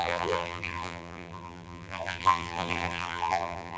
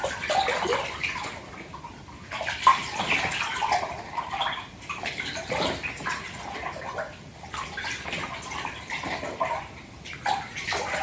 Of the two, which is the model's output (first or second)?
first